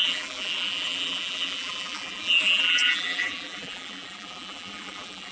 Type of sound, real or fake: fake